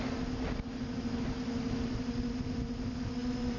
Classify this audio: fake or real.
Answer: real